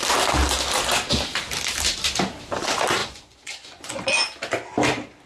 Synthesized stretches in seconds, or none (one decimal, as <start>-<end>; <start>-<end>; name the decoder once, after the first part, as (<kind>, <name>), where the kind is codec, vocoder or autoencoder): 3.0-4.1 (vocoder, Vocos)